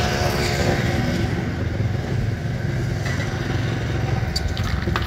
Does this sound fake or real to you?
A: real